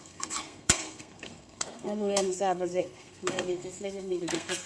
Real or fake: fake